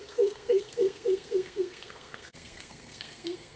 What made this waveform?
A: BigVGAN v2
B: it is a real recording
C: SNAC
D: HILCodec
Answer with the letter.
C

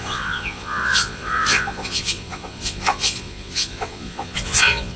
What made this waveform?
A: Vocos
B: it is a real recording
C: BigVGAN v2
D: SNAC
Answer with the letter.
A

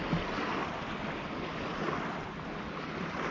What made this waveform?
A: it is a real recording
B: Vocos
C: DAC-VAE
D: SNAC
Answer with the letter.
A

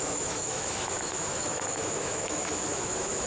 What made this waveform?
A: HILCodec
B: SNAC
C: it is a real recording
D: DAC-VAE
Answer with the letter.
D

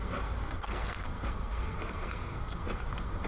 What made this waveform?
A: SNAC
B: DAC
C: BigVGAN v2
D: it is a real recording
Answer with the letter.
A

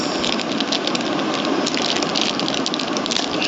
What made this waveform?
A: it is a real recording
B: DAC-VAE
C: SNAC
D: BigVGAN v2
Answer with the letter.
A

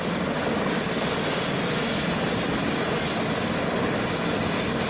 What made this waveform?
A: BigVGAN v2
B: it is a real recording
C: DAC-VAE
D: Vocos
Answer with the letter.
B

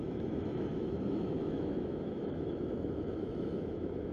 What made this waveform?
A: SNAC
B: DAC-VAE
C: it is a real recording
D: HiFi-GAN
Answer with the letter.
B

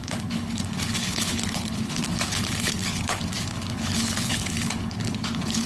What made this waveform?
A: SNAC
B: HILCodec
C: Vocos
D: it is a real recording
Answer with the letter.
B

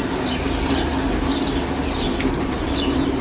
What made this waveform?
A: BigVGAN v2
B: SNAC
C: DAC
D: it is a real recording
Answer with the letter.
D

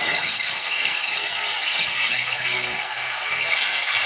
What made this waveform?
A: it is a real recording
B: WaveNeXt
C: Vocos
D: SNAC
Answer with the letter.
D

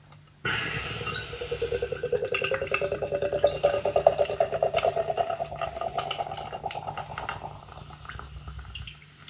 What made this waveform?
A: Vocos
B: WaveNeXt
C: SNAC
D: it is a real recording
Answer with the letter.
D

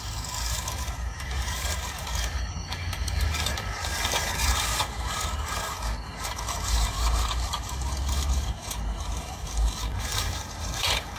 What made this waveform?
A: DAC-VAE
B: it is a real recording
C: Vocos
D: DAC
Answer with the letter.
D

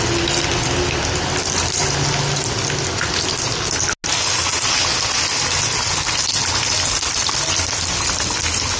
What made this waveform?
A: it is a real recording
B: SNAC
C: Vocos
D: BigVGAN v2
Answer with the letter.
A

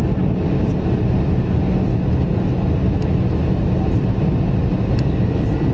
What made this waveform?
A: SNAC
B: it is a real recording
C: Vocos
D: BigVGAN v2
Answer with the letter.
B